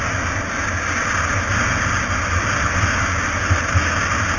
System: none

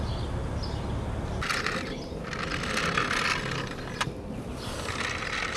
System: none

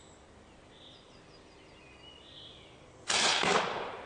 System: vocoder, BigVGAN v2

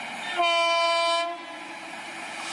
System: none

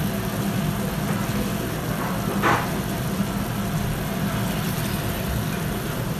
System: none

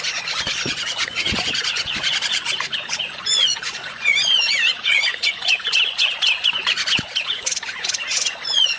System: vocoder, Vocos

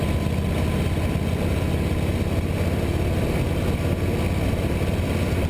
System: none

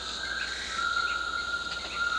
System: none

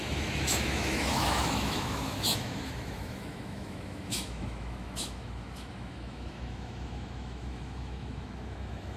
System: autoencoder, DAC-VAE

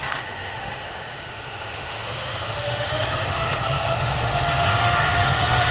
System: autoencoder, DAC-VAE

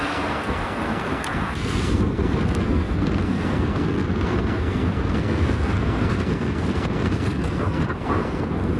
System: codec, SNAC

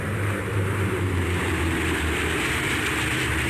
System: vocoder, BigVGAN v2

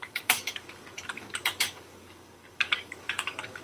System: codec, DAC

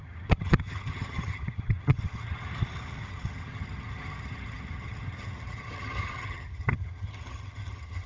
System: vocoder, HiFi-GAN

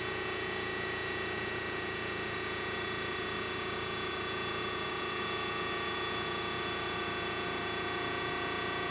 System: vocoder, Vocos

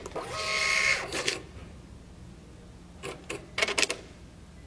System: none